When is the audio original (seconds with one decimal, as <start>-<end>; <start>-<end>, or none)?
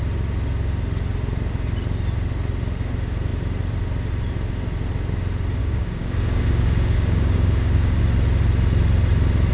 0.0-5.6; 8.0-9.5